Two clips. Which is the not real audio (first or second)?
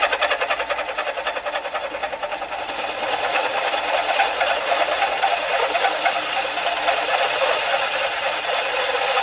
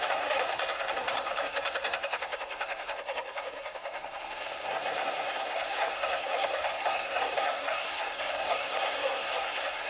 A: second